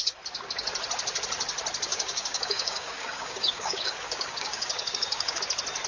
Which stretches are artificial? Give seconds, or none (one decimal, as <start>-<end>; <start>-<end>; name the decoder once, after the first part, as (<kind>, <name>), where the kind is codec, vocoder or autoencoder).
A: 1.9-5.4 (codec, DAC)